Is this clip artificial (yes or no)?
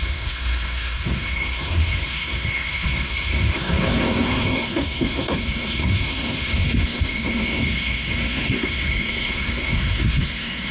yes